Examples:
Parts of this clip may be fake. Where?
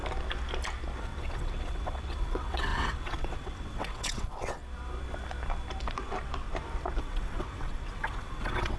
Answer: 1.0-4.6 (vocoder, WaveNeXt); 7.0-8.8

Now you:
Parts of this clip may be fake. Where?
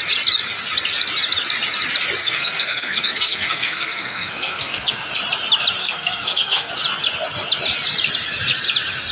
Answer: 2.2-5.1 (codec, SNAC); 5.8-6.7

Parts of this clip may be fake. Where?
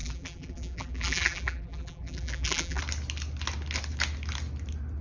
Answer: 0.0-2.8 (vocoder, BigVGAN v2)